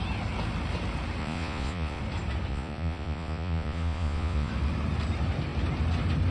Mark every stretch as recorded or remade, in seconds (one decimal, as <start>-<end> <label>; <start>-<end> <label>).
0.0-1.2 recorded; 1.2-2.0 remade; 2.0-2.5 recorded; 2.5-4.5 remade; 4.5-6.3 recorded